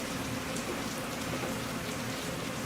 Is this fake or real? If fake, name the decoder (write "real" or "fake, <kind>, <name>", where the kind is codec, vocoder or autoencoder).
real